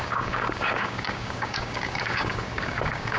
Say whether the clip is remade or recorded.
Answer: remade